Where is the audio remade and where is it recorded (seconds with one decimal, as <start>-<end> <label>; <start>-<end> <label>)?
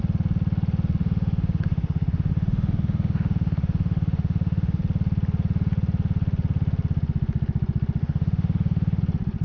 0.0-1.0 recorded; 1.0-4.8 remade; 4.8-8.0 recorded; 8.0-9.0 remade; 9.0-9.4 recorded